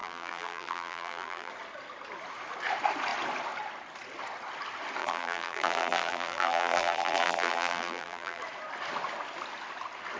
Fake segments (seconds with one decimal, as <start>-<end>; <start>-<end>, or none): 0.0-1.5; 5.0-8.4